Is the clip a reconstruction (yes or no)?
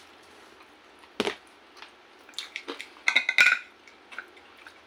no